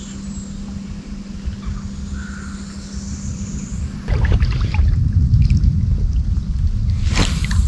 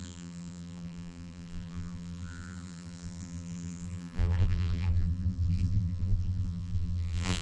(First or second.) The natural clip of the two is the first